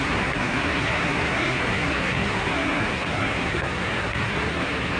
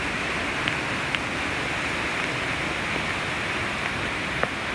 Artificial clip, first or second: first